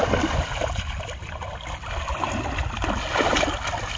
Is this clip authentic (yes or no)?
yes